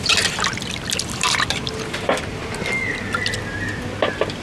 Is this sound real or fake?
real